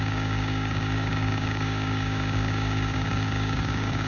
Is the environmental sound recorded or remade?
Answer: remade